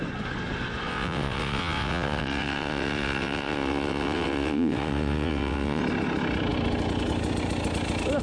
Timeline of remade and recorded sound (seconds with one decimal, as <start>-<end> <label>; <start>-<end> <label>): 0.0-0.9 recorded; 0.9-5.8 remade; 5.8-8.2 recorded